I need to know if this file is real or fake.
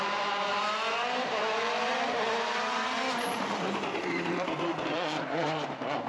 fake